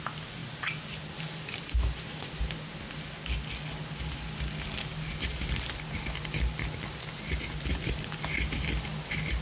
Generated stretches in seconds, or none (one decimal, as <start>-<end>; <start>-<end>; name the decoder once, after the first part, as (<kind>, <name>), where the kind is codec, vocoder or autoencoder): none